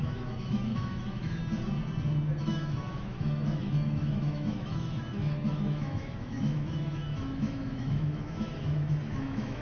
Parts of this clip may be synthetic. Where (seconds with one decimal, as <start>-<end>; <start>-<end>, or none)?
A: 0.0-1.4; 2.4-9.6